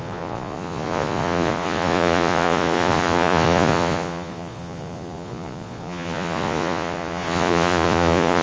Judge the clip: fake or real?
fake